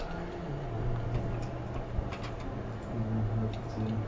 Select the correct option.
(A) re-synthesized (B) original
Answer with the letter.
B